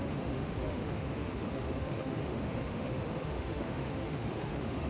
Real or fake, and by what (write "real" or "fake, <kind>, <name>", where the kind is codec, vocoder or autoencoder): fake, autoencoder, DAC-VAE